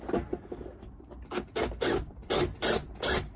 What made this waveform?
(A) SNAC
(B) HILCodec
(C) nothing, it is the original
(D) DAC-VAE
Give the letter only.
C